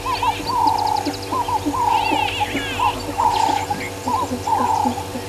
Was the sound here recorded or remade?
recorded